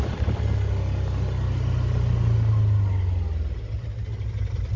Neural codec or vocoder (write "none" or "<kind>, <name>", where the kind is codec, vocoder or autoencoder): none